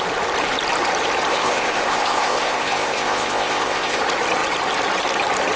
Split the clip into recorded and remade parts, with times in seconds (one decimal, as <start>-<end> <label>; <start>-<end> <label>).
0.0-1.3 recorded; 1.3-4.0 remade; 4.0-5.6 recorded